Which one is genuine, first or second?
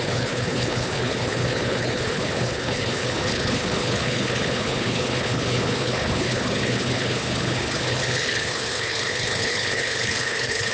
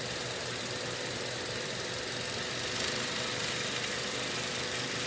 second